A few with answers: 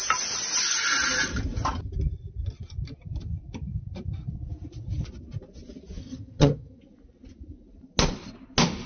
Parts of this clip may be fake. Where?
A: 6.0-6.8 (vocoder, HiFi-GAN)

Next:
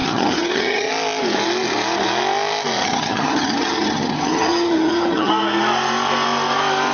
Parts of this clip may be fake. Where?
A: 0.0-0.9 (vocoder, HiFi-GAN); 2.8-5.3